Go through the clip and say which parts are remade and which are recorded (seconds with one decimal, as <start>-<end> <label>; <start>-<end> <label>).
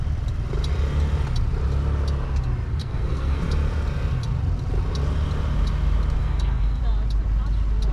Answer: 0.0-2.8 recorded; 2.8-3.4 remade; 3.4-6.2 recorded; 6.2-6.8 remade; 6.8-7.9 recorded